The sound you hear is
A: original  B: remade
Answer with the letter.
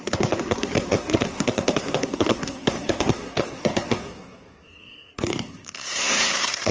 B